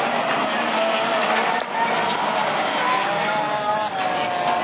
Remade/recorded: recorded